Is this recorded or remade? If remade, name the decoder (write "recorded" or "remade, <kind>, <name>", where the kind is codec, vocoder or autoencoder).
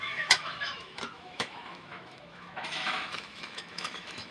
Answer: remade, autoencoder, DAC-VAE